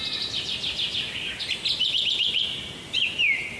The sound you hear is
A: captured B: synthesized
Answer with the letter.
A